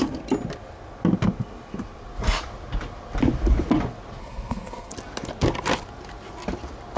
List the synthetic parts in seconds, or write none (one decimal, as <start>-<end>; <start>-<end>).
4.2-4.9